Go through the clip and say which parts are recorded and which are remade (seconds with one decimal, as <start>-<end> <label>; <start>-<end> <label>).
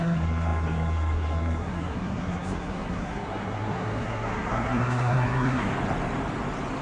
0.0-5.7 remade; 5.7-6.8 recorded